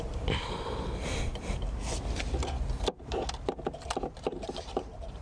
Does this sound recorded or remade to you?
remade